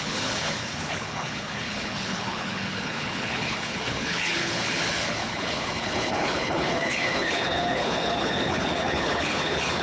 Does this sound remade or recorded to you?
remade